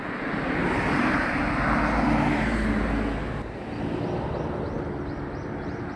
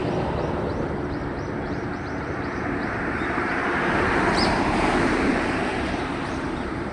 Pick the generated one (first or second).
second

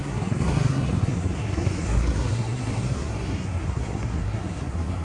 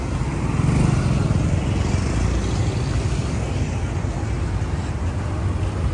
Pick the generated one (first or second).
first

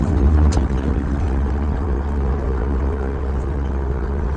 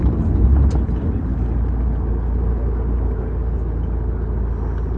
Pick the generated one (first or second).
first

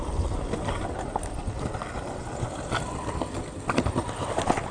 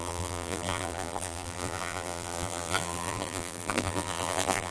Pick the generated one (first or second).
second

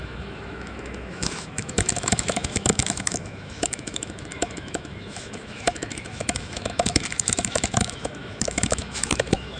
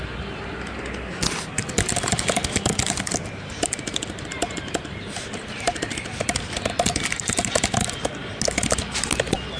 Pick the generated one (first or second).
first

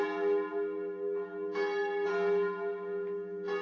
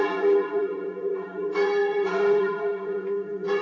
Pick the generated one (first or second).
second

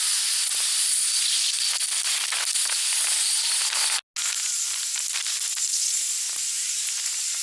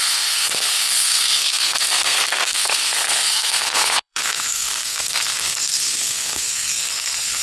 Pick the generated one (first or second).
second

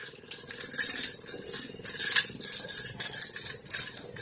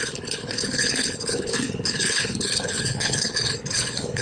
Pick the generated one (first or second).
second